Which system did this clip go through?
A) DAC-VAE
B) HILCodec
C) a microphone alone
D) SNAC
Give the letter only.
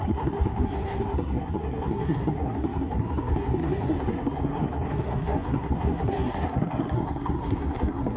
D